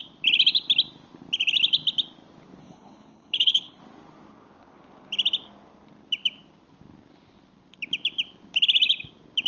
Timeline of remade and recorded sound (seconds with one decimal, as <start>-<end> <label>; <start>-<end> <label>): 0.0-2.6 recorded; 2.6-3.8 remade; 3.8-9.5 recorded